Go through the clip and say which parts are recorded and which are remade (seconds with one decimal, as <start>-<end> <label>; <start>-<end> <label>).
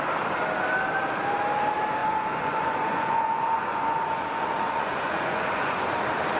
0.0-2.0 recorded; 2.0-5.8 remade; 5.8-6.4 recorded